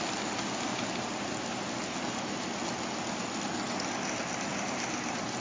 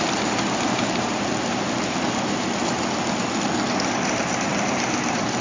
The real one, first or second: first